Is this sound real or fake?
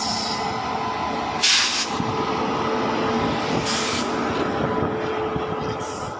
real